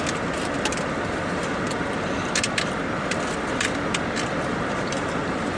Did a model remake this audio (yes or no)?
no